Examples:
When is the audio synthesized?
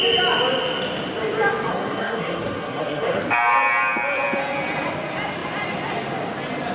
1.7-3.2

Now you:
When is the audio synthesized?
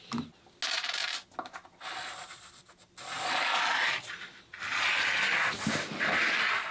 none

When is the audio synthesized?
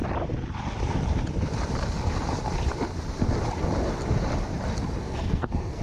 5.0-5.8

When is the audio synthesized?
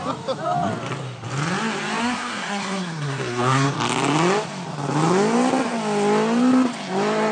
2.0-3.7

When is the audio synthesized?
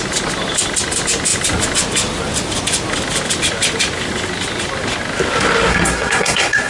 5.7-6.7